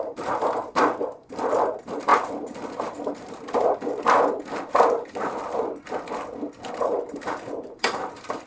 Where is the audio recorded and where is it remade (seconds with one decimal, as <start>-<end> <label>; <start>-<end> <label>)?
0.0-2.1 remade; 2.1-6.7 recorded; 6.7-8.5 remade